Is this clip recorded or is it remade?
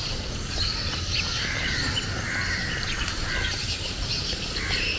remade